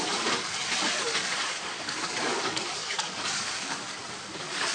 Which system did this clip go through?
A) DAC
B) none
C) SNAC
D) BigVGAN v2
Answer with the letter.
A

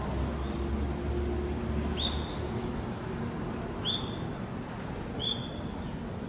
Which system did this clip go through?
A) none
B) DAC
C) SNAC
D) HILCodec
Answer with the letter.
A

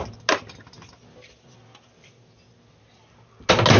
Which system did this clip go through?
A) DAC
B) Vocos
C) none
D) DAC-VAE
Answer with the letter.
C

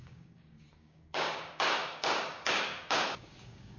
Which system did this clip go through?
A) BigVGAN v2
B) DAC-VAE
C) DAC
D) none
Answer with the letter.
C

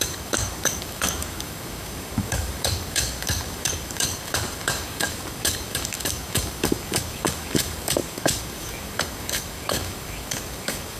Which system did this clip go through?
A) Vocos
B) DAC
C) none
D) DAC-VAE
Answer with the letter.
B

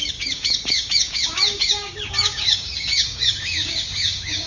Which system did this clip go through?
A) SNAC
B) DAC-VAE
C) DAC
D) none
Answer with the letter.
C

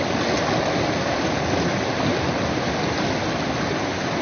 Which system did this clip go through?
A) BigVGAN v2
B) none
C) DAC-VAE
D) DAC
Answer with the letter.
B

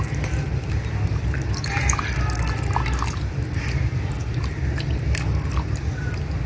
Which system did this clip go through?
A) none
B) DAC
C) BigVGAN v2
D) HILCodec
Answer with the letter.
A